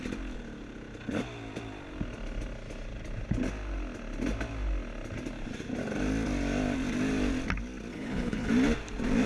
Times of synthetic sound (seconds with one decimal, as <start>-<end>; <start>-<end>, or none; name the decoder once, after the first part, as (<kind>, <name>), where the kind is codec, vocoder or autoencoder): 7.9-8.5 (codec, HILCodec)